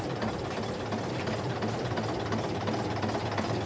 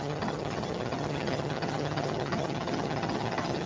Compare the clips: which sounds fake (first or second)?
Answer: second